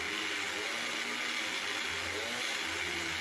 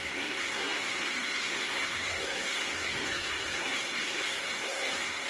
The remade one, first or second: second